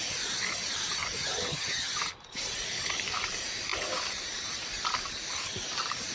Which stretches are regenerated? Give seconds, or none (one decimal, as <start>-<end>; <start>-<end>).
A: 1.2-2.0